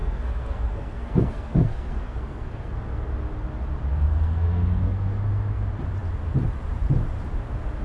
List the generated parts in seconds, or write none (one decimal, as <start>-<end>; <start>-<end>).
0.0-3.1; 3.9-5.6